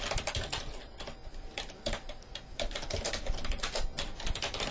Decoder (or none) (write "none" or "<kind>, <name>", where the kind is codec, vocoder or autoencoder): vocoder, BigVGAN v2